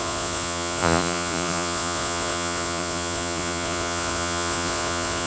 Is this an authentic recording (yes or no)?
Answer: no